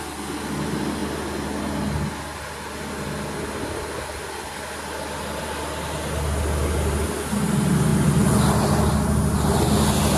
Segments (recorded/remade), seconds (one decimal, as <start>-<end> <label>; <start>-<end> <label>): 0.0-10.2 recorded